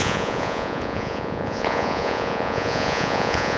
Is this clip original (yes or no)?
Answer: no